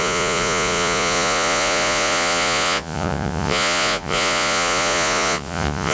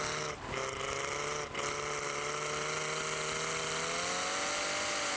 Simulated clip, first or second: first